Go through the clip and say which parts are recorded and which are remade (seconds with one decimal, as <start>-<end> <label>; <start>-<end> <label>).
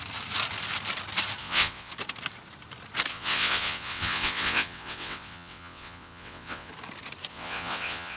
0.0-1.4 recorded; 1.4-1.9 remade; 1.9-3.1 recorded; 3.1-6.7 remade; 6.7-7.3 recorded; 7.3-8.2 remade